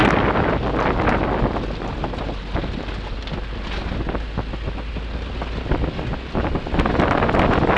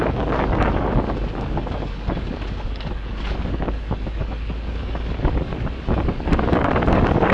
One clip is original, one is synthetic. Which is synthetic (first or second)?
second